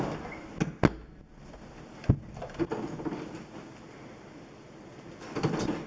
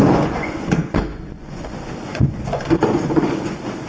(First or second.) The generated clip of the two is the second